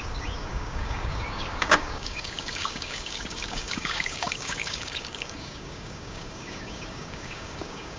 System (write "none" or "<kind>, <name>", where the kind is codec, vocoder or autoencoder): codec, DAC